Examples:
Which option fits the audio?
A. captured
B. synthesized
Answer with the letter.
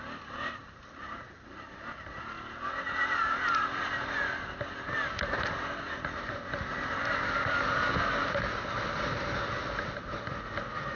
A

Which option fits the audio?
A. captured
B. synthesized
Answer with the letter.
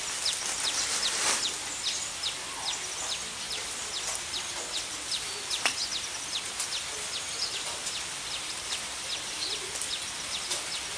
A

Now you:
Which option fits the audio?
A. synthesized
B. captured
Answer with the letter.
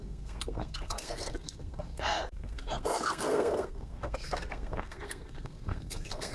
A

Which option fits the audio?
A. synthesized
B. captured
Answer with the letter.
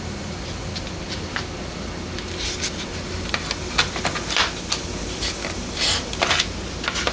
B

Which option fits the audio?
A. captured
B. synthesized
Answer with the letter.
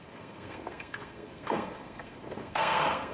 B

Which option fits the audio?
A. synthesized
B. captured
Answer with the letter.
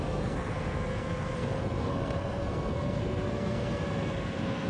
A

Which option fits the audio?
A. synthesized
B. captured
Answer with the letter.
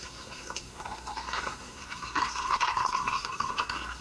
A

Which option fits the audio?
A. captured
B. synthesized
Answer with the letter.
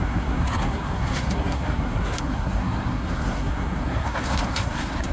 B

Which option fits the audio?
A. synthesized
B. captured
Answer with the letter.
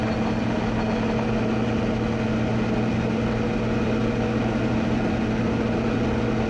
B